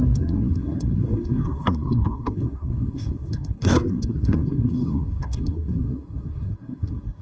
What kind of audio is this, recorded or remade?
remade